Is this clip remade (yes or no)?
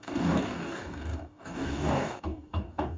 yes